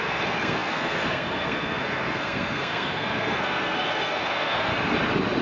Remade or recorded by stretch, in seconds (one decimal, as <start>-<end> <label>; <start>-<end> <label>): 0.0-4.7 remade; 4.7-5.4 recorded